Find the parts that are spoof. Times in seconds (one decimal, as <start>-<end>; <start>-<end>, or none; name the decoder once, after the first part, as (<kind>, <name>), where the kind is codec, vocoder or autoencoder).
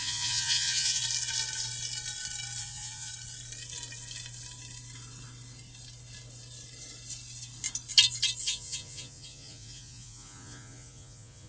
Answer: 0.0-1.0 (vocoder, Vocos); 2.6-3.1; 8.4-11.5